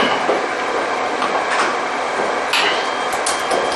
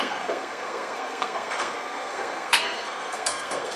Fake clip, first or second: second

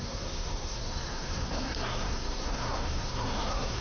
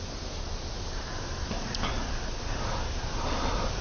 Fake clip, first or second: first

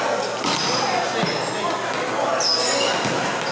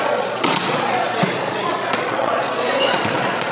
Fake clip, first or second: second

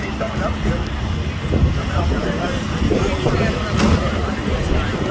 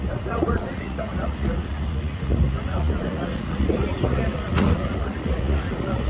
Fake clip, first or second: second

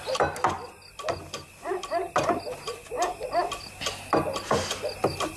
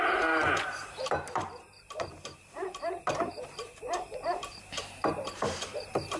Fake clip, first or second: second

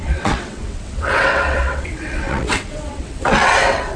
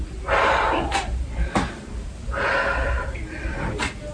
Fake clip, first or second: first